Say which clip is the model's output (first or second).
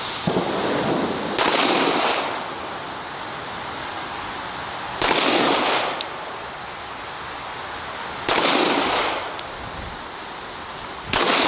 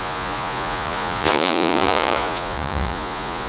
second